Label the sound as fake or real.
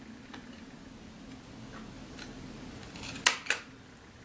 real